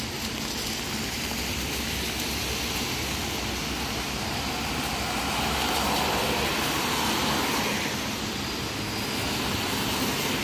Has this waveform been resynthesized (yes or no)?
no